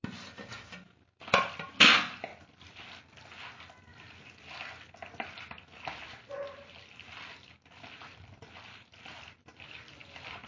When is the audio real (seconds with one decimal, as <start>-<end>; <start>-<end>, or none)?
2.3-3.0; 3.9-6.3